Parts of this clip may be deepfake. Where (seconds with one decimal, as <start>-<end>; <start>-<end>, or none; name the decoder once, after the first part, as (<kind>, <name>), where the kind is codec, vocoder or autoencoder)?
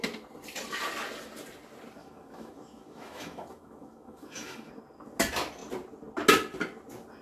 2.0-4.7 (autoencoder, DAC-VAE)